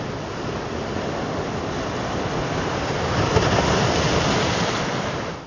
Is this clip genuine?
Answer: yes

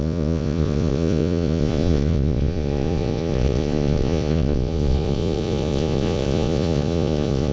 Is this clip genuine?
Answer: no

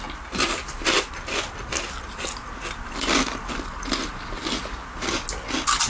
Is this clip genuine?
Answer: yes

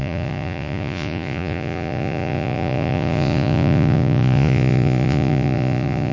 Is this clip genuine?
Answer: no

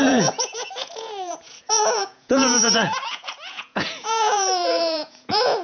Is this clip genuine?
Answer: no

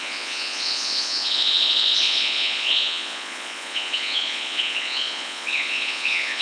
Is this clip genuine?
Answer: no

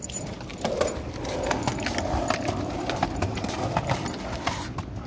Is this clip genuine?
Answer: yes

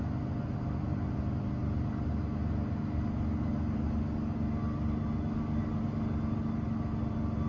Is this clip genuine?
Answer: yes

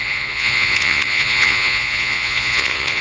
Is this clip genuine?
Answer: no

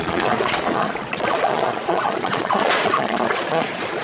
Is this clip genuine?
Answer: no